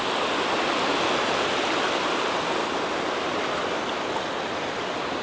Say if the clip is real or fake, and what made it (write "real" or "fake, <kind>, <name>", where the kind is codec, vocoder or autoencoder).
real